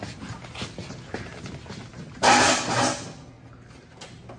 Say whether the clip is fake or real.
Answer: real